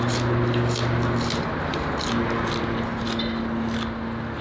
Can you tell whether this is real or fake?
real